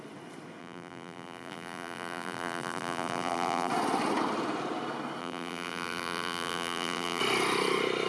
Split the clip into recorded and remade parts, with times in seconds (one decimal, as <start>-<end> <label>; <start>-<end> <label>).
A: 0.0-0.6 recorded; 0.6-3.7 remade; 3.7-5.2 recorded; 5.2-7.2 remade; 7.2-8.1 recorded